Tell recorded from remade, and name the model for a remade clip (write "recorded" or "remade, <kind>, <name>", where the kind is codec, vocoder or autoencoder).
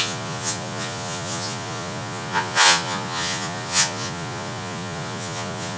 remade, vocoder, Vocos